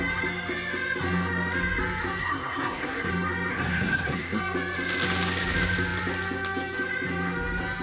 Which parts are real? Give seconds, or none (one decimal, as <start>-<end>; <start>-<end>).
0.0-2.2; 3.1-3.5; 4.4-7.8